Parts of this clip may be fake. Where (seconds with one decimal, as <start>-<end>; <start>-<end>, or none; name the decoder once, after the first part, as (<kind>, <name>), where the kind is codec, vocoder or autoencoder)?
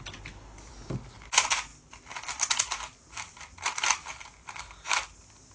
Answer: none